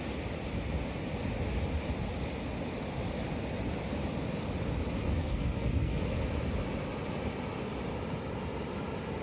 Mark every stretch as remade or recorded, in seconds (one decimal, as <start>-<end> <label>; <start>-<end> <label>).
0.0-5.2 recorded; 5.2-6.0 remade; 6.0-9.2 recorded